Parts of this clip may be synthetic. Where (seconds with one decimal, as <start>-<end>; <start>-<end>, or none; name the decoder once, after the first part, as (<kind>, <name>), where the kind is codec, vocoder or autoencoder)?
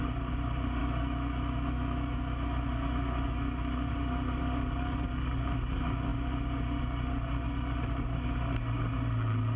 0.8-3.9 (autoencoder, DAC-VAE)